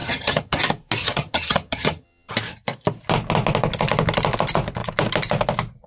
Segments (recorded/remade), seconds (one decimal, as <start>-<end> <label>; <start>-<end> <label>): 0.0-0.6 remade; 0.6-1.0 recorded; 1.0-2.3 remade; 2.3-5.9 recorded